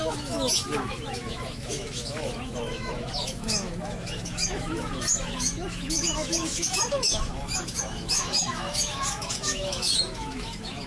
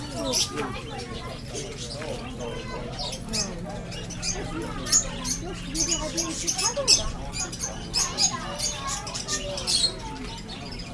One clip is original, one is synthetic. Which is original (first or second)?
second